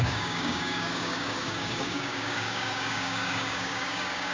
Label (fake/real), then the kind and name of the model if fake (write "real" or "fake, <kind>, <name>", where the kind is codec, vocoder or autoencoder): fake, codec, DAC